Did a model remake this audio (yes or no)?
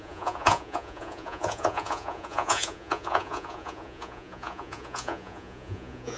yes